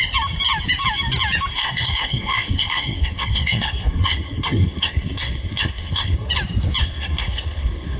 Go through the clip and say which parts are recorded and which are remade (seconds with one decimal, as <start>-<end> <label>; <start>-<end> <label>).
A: 0.0-1.5 recorded; 1.5-6.3 remade; 6.3-6.8 recorded; 6.8-8.0 remade